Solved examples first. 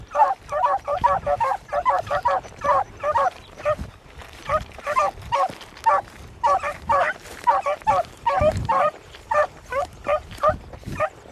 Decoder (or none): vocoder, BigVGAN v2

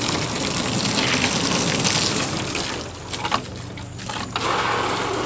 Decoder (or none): none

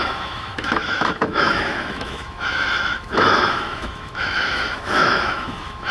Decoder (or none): autoencoder, DAC-VAE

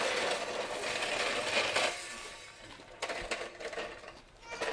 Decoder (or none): vocoder, BigVGAN v2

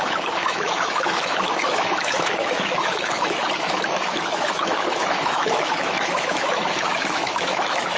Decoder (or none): autoencoder, DAC-VAE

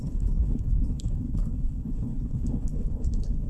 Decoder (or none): codec, HILCodec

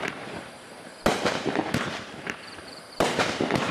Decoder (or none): vocoder, BigVGAN v2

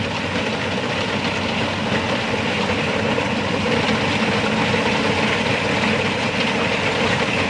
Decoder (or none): none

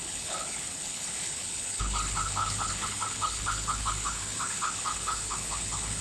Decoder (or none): codec, HILCodec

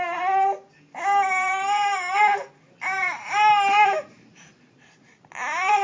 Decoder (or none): vocoder, BigVGAN v2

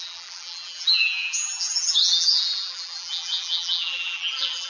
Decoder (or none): vocoder, BigVGAN v2